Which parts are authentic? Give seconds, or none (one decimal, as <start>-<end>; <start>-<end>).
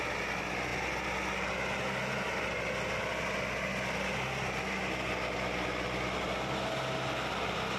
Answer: 0.0-7.8